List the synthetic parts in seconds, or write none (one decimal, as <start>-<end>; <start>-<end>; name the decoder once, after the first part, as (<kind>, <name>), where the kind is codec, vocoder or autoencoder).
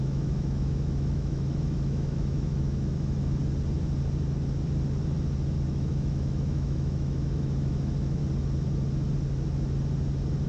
0.0-3.4 (autoencoder, DAC-VAE); 5.7-8.2